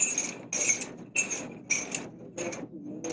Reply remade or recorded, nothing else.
recorded